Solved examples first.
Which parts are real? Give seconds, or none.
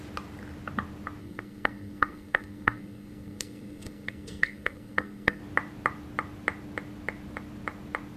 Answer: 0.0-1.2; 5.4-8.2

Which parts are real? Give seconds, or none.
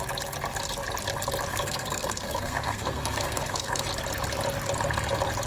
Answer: 0.0-1.5; 3.8-5.5